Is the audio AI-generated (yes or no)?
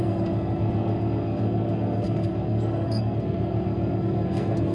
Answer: yes